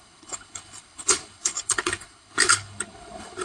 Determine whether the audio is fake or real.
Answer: fake